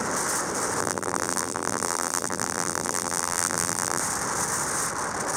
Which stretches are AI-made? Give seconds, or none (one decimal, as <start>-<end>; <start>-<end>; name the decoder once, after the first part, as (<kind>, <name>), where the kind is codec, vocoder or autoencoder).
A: 0.8-4.0 (vocoder, BigVGAN v2)